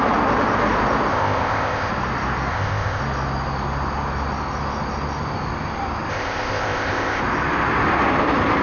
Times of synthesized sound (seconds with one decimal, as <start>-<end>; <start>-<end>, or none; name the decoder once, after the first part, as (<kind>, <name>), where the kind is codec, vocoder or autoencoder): 1.1-1.9 (codec, ZipCodec); 2.5-3.0; 6.1-7.2